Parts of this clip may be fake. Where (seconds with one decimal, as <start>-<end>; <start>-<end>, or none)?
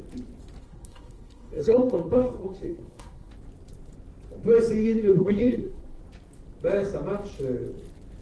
0.6-3.3; 4.8-6.0